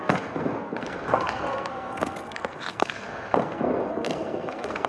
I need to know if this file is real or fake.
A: fake